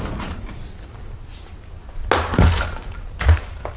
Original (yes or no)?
yes